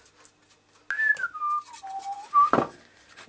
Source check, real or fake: real